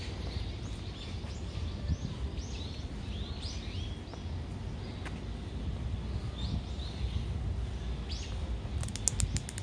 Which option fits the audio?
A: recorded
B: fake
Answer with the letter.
A